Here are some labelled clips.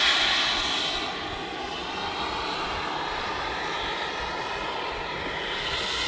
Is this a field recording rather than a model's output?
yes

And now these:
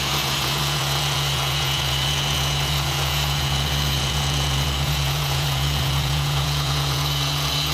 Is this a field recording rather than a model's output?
no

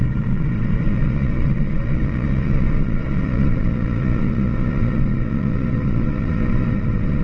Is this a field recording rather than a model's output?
no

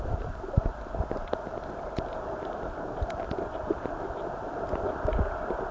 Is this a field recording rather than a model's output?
yes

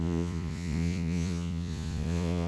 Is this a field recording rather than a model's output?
no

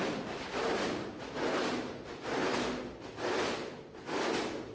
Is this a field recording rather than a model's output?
yes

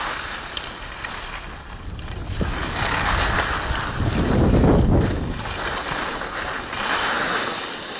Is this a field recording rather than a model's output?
yes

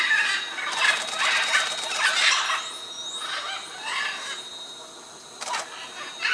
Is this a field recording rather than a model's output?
yes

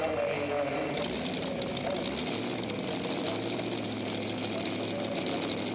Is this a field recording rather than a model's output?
yes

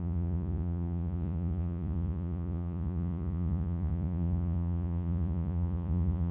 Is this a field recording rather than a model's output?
no